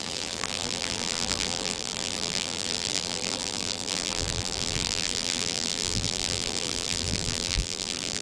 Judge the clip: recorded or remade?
remade